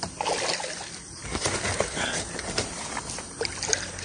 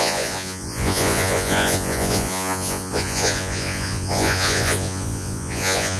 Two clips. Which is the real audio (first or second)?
first